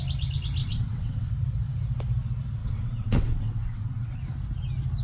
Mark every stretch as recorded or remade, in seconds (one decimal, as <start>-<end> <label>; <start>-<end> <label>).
0.0-0.6 recorded; 0.6-1.3 remade; 1.3-2.6 recorded; 2.6-4.2 remade; 4.2-5.0 recorded